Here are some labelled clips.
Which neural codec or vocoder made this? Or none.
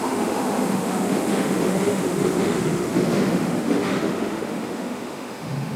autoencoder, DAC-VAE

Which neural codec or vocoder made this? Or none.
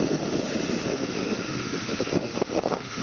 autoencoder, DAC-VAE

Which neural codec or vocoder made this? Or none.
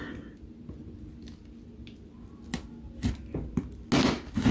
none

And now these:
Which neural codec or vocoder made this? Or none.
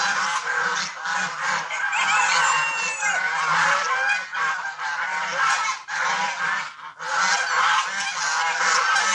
none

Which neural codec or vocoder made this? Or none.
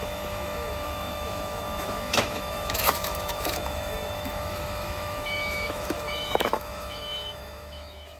autoencoder, DAC-VAE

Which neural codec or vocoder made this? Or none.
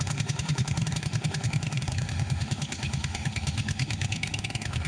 autoencoder, DAC-VAE